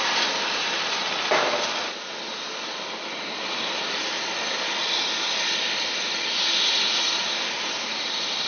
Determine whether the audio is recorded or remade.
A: recorded